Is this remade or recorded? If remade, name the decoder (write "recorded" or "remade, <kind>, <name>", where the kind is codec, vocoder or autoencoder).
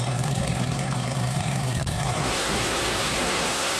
remade, codec, SNAC